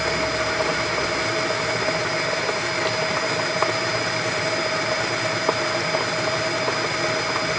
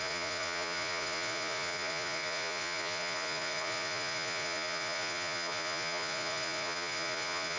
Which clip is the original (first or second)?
first